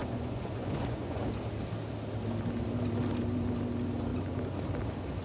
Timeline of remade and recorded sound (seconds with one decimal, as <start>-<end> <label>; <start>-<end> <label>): 0.0-1.2 remade; 1.2-5.2 recorded